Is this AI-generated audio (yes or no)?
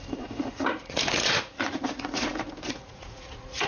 yes